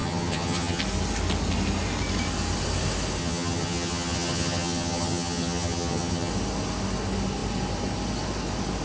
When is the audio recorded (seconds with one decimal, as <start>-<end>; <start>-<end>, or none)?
0.8-3.2; 6.3-8.8